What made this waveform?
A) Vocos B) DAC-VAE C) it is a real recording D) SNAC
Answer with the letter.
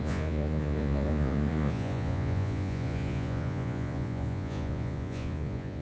A